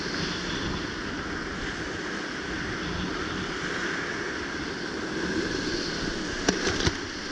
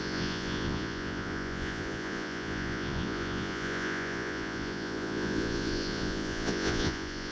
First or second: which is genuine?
first